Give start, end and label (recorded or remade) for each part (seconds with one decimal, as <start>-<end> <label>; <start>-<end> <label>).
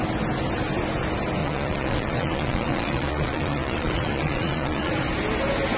0.0-1.4 recorded; 1.4-4.9 remade; 4.9-5.8 recorded